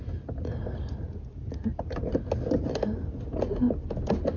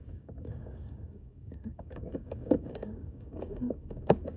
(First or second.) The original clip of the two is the first